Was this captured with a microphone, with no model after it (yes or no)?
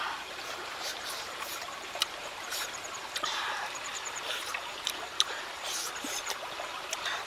no